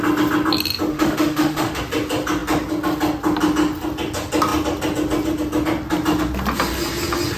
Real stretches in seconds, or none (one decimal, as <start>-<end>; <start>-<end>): 0.0-0.9; 1.8-7.4